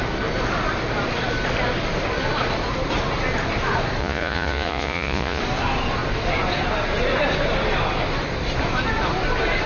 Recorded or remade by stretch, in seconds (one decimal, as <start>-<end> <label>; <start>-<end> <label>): 0.0-4.0 recorded; 4.0-5.4 remade; 5.4-9.7 recorded